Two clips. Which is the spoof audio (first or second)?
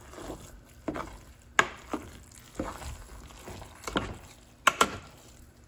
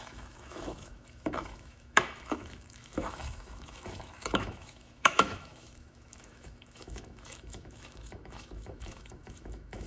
second